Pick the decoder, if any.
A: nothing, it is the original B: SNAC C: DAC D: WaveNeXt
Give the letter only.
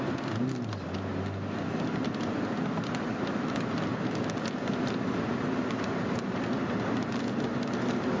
A